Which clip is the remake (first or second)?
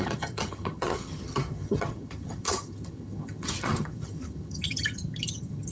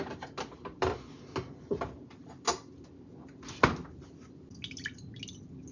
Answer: first